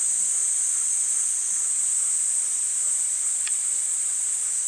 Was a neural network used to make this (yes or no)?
yes